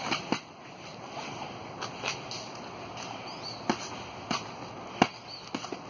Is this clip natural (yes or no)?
yes